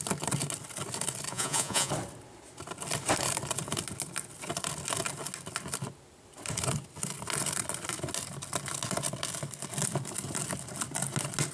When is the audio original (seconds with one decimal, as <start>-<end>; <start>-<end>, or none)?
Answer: 0.0-1.3; 1.9-11.5